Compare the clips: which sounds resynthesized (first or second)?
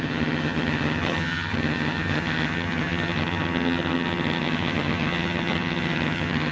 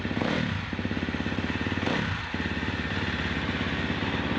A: first